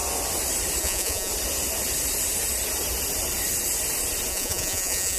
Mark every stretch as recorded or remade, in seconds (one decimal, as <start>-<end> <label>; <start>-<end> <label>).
0.0-0.8 recorded; 0.8-1.3 remade; 1.3-4.3 recorded; 4.3-5.2 remade